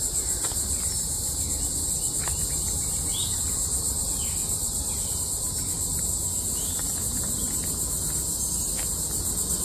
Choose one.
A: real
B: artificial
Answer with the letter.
A